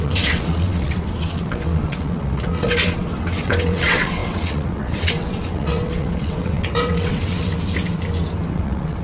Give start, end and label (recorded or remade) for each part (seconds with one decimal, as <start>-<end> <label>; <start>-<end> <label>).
0.0-7.5 remade; 7.5-8.5 recorded; 8.5-9.0 remade